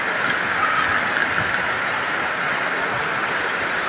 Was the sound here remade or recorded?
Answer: recorded